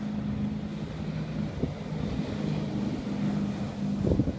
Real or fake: real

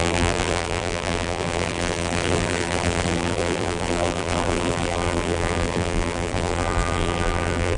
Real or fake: fake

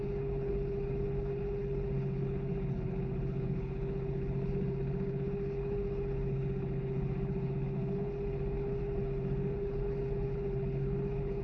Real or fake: fake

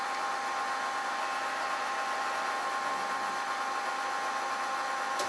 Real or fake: real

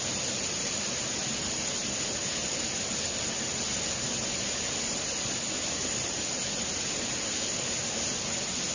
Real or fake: real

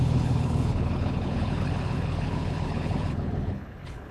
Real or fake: fake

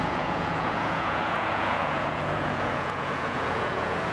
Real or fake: fake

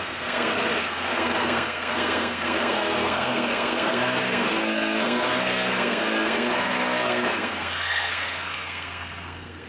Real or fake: fake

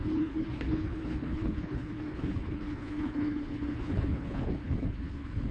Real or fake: fake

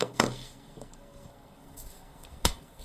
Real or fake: fake